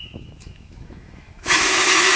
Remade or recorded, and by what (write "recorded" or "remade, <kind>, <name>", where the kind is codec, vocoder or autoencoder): remade, autoencoder, DAC-VAE